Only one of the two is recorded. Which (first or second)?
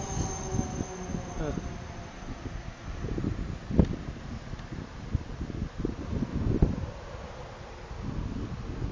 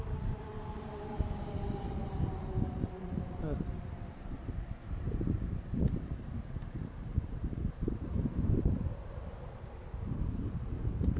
first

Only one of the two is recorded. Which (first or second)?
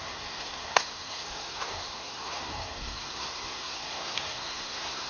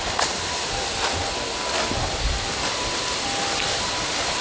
second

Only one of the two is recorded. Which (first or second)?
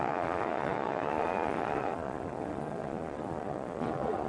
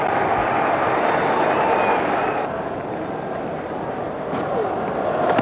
second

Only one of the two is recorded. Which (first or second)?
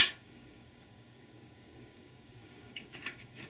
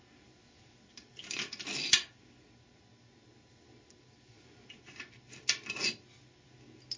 second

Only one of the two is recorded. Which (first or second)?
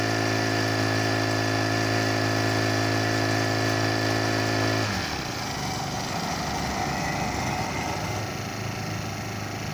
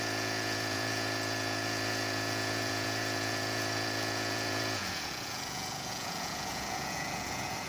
first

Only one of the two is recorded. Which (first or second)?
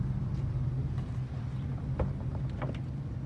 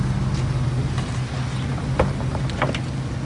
second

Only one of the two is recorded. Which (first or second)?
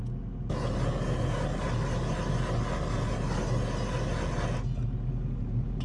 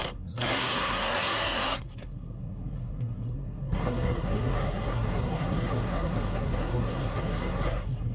first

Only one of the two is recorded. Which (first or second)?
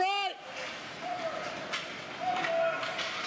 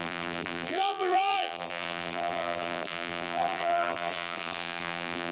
first